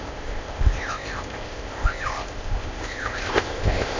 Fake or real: fake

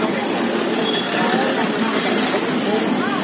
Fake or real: real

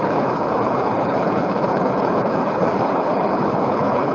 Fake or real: fake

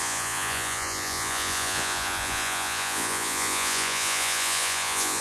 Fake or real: fake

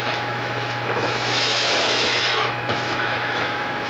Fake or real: fake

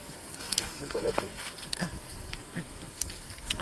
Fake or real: fake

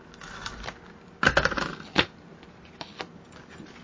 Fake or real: real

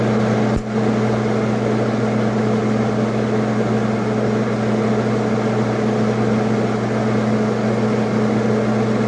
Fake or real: real